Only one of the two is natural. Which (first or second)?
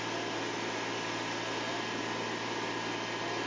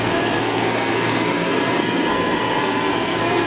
first